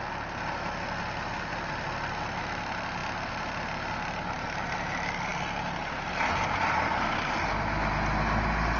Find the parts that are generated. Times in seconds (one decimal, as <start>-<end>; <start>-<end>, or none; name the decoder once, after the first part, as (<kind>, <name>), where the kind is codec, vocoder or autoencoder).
none